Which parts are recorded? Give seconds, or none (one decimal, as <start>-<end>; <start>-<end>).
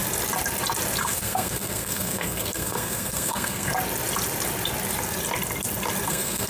0.0-1.0; 3.7-6.1